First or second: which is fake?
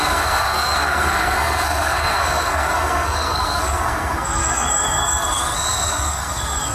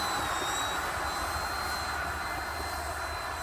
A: first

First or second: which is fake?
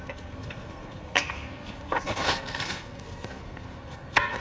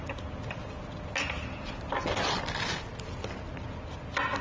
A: first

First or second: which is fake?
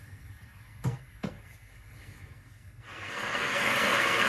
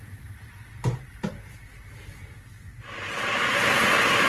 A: first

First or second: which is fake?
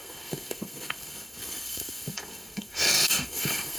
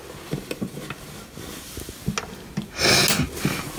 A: first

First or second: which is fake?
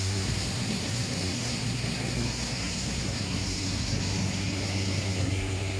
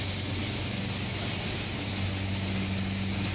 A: first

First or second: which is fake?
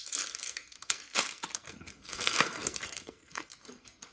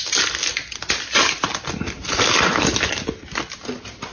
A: first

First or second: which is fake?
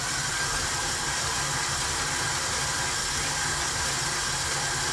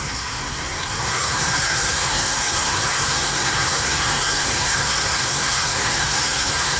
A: second